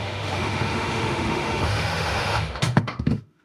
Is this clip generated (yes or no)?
yes